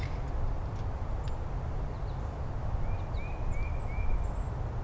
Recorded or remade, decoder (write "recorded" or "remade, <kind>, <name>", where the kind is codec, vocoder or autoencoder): recorded